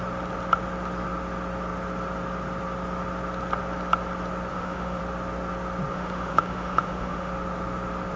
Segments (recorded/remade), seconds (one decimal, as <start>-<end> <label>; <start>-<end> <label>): 0.0-4.5 recorded; 4.5-5.0 remade; 5.0-5.9 recorded; 5.9-7.3 remade; 7.3-8.2 recorded